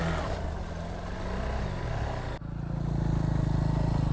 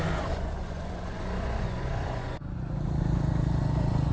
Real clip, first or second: first